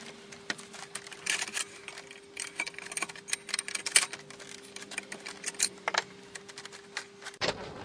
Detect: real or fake real